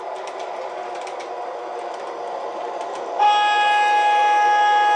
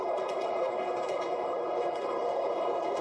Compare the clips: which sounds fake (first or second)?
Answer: second